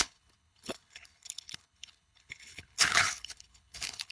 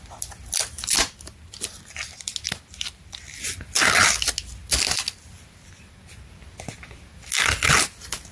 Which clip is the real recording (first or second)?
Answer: second